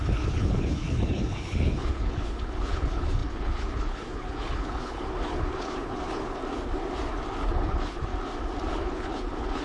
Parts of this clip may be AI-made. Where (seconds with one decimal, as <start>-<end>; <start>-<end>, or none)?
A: 0.0-6.4; 7.4-8.1; 8.7-9.6